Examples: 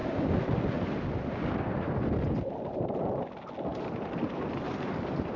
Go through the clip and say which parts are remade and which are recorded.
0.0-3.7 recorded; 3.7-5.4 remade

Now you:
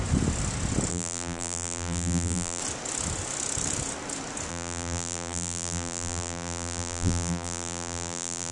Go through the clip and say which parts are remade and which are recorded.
0.0-0.9 recorded; 0.9-2.6 remade; 2.6-4.5 recorded; 4.5-8.5 remade

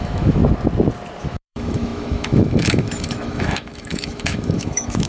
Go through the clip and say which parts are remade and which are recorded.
0.0-0.4 remade; 0.4-1.2 recorded; 1.2-5.1 remade

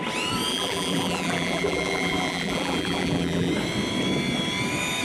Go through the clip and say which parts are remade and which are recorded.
0.0-0.5 recorded; 0.5-3.5 remade; 3.5-5.0 recorded